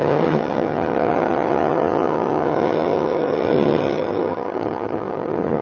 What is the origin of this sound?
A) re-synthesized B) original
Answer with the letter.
A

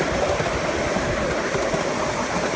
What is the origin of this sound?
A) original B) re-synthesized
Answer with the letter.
A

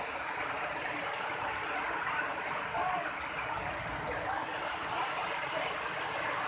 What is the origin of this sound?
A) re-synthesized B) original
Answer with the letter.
B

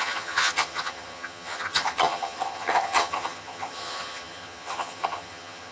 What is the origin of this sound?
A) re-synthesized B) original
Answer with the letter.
A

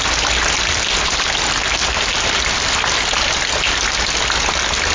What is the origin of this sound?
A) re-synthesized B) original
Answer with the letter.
B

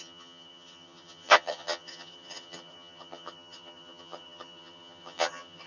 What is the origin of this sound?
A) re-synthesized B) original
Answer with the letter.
A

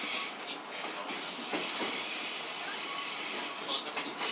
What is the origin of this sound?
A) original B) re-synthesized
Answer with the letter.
A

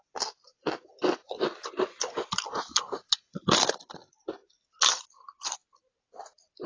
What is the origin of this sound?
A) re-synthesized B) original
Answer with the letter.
B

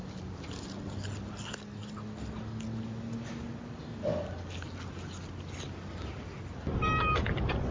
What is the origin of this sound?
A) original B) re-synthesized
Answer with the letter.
A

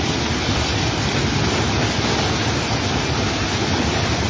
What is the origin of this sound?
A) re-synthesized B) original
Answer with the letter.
B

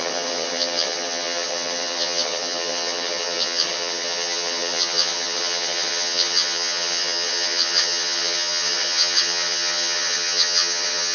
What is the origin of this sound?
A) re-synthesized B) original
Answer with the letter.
A